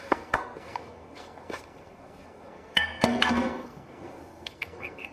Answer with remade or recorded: remade